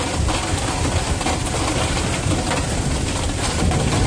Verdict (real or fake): real